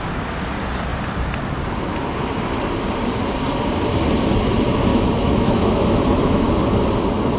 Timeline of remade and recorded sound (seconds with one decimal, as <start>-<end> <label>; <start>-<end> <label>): 0.0-4.9 recorded; 4.9-6.5 remade; 6.5-7.4 recorded